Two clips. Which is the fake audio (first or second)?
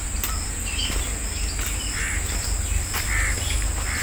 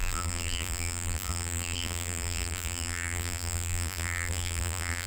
second